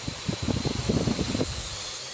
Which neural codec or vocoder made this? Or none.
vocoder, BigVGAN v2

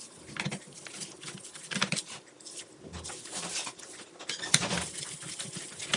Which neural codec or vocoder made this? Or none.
none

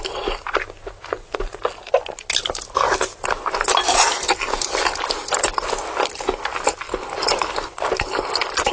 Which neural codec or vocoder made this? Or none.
none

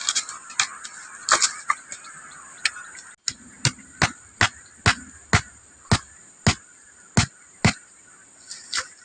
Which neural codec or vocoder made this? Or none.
none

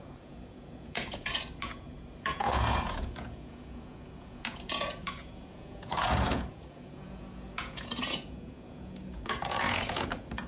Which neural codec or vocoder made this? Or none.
vocoder, Vocos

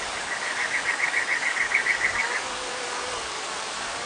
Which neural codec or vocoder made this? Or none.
codec, DAC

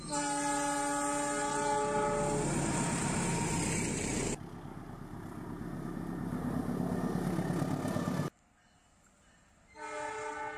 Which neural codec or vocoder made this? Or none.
none